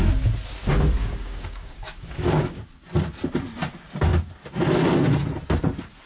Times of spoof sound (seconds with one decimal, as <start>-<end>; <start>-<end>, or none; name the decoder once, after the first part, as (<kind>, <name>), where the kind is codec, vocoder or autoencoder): 1.0-2.7 (codec, DAC)

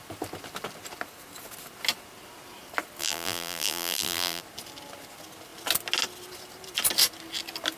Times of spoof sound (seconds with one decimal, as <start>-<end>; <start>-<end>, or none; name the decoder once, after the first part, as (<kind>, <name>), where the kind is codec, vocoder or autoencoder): 3.0-4.4 (vocoder, BigVGAN v2)

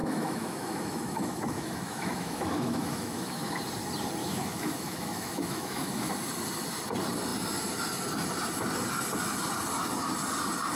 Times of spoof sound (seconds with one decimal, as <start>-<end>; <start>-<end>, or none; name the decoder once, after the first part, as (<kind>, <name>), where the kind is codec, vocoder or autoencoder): 0.0-3.6 (autoencoder, DAC-VAE); 4.2-6.1